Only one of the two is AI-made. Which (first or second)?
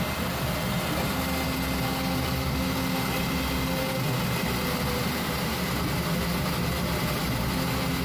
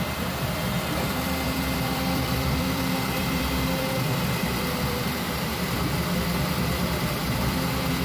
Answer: second